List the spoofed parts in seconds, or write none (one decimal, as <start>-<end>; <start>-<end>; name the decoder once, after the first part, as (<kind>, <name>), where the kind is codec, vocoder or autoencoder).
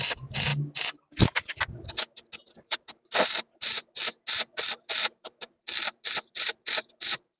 0.0-0.5 (vocoder, BigVGAN v2); 2.4-3.8; 4.5-7.4